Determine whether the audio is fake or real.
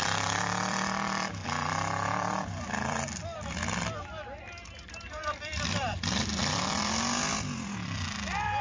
fake